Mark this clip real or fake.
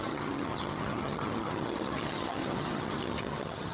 fake